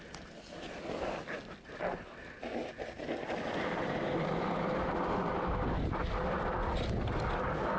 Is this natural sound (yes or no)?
yes